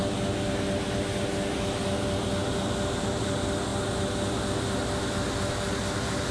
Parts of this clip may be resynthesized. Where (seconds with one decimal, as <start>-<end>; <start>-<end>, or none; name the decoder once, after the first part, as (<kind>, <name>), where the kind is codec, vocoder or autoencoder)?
none